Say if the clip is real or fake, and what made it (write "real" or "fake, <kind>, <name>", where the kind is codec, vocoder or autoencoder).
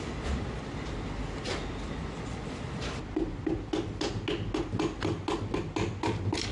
real